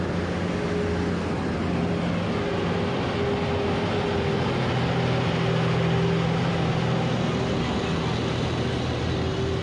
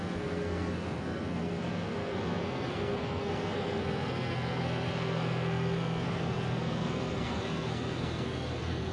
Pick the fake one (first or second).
second